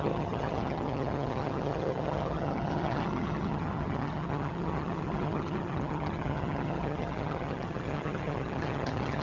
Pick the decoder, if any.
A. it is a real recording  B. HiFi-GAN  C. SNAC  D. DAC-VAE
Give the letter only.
B